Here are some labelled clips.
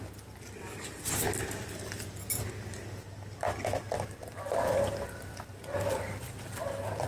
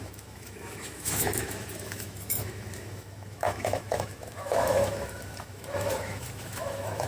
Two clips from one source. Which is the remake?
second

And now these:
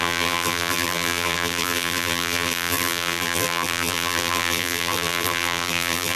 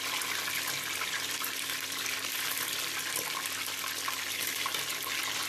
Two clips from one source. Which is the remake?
first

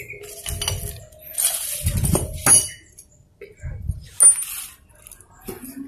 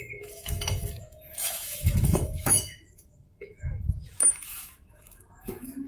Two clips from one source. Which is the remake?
second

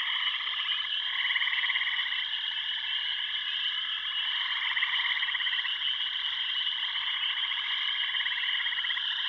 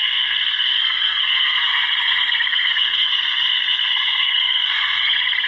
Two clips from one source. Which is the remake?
second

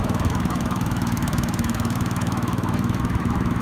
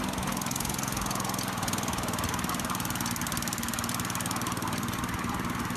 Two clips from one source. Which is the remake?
first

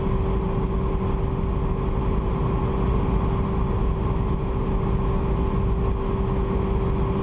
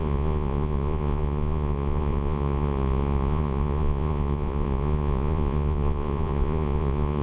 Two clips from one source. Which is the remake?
second